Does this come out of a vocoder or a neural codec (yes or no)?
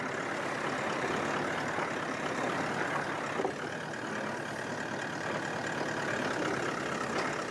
no